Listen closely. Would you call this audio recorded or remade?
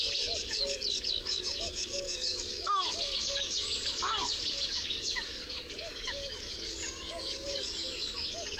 remade